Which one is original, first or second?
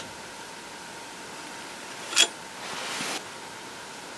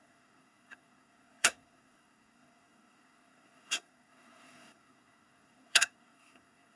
first